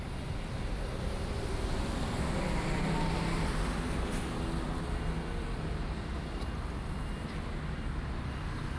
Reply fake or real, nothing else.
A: real